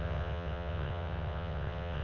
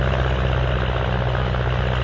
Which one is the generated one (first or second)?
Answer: first